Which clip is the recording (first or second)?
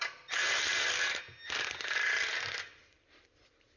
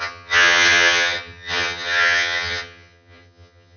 first